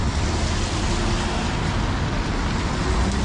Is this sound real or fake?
real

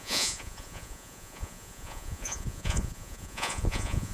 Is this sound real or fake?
fake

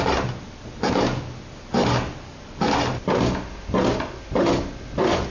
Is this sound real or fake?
real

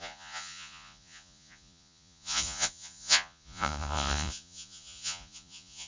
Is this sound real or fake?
fake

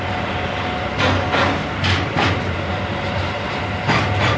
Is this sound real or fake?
real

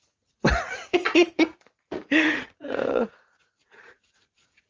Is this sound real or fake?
fake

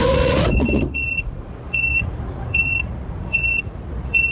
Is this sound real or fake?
fake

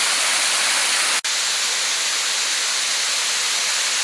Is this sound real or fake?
real